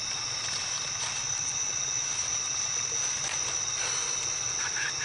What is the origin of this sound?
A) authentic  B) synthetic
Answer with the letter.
A